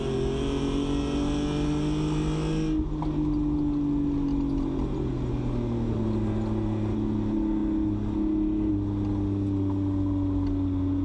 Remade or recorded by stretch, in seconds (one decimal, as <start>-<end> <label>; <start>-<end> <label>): 0.0-11.0 recorded